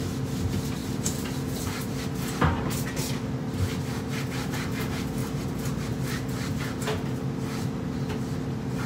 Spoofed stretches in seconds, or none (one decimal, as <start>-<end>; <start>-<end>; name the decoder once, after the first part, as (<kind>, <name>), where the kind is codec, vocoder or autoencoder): 0.8-2.8 (vocoder, BigVGAN v2); 5.2-6.5